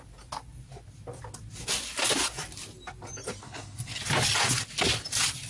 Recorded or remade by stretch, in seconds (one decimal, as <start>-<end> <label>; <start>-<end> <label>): 0.0-3.4 recorded; 3.4-4.0 remade; 4.0-5.5 recorded